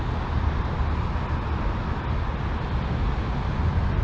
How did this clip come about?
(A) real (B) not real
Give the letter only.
A